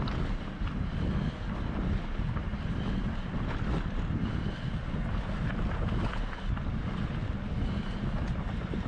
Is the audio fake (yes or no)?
no